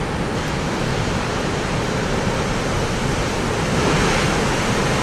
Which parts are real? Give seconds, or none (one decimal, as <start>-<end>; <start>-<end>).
0.0-5.0